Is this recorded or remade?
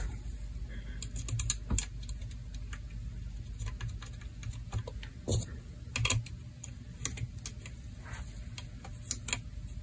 recorded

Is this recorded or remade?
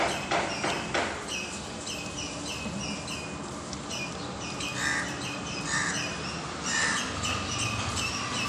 recorded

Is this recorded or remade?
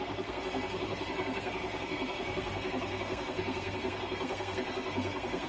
remade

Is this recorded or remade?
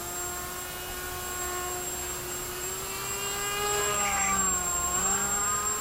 recorded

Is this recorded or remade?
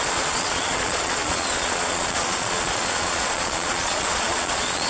remade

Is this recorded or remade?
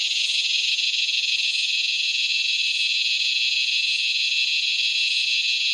remade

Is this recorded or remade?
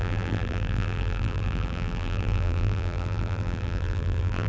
remade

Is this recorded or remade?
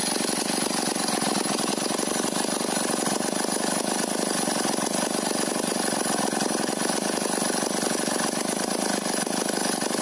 recorded